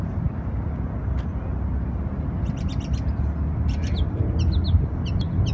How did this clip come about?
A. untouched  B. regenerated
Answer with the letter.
A